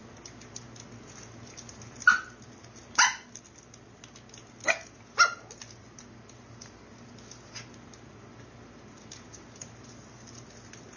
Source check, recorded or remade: recorded